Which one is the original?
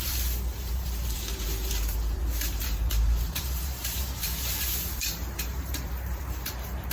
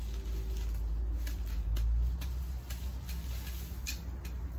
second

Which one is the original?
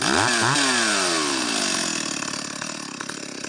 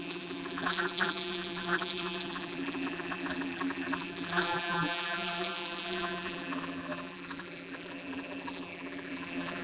first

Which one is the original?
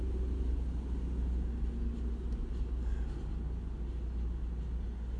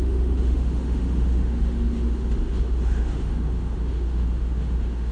first